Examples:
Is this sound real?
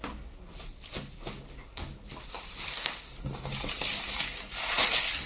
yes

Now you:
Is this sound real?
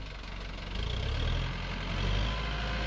yes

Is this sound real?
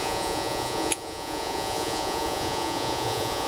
no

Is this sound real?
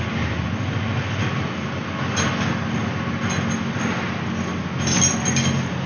yes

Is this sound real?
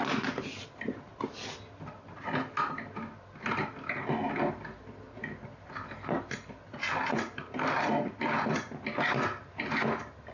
yes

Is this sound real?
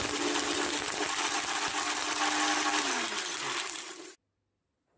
yes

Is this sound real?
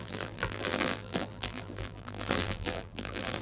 no